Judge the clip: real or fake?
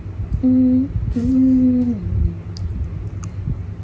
real